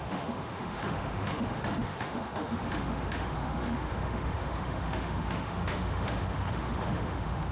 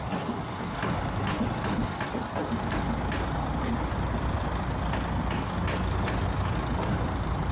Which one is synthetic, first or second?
first